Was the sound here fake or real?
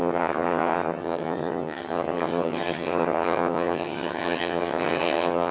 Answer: fake